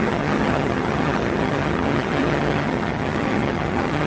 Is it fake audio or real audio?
fake